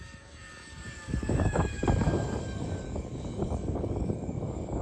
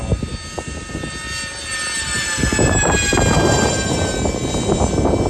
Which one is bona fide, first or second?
second